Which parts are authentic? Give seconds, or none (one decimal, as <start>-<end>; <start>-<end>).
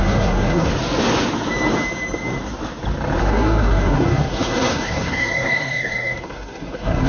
0.7-3.2